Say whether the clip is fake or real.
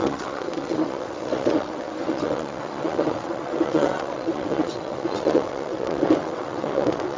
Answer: fake